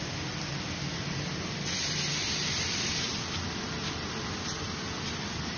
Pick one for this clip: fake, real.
fake